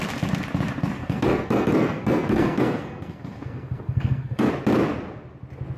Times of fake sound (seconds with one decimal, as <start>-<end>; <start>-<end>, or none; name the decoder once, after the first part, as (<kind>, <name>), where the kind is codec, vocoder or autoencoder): 1.0-4.5 (codec, SNAC)